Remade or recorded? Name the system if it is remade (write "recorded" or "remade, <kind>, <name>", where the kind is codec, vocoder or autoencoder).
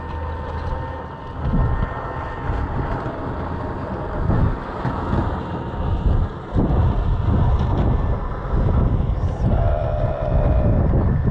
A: recorded